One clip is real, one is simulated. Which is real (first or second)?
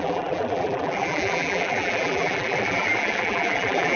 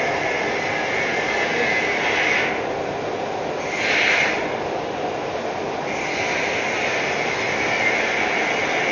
second